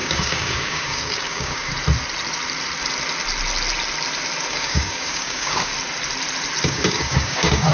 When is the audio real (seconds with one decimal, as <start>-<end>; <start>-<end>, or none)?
1.7-4.5; 5.7-6.6